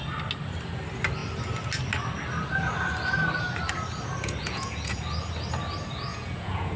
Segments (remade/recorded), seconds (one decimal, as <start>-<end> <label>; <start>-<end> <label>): 0.0-4.4 recorded; 4.4-5.0 remade; 5.0-6.1 recorded; 6.1-6.8 remade